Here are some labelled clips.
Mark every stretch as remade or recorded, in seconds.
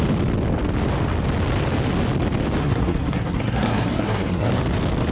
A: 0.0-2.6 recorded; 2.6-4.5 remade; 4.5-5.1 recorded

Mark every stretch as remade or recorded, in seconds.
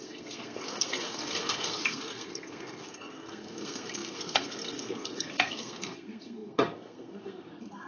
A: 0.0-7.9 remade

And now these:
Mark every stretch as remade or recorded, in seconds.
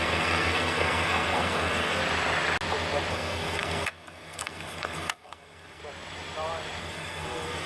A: 0.0-2.0 remade; 2.0-3.1 recorded; 3.1-5.8 remade; 5.8-6.8 recorded; 6.8-7.7 remade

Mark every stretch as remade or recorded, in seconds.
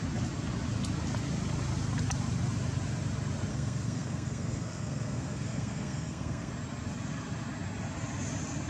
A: 0.0-3.5 recorded; 3.5-6.5 remade; 6.5-8.7 recorded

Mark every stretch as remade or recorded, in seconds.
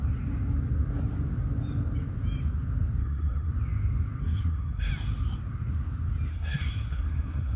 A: 0.0-3.0 recorded; 3.0-3.5 remade; 3.5-4.2 recorded; 4.2-4.9 remade; 4.9-6.3 recorded; 6.3-7.6 remade